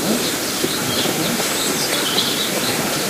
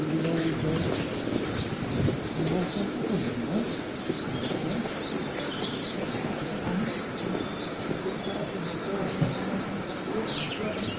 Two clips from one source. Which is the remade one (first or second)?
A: first